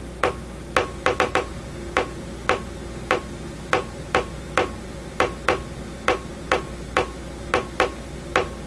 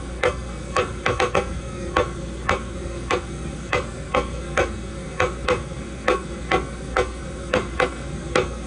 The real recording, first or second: first